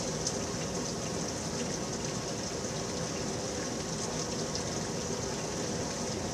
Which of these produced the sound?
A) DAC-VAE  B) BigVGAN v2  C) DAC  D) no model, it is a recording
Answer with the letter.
D